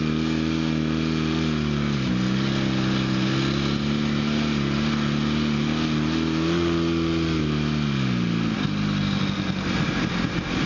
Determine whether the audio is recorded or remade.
recorded